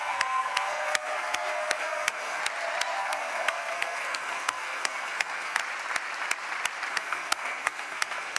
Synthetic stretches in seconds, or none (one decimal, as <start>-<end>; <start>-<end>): 0.0-2.4; 3.0-5.6; 6.9-8.4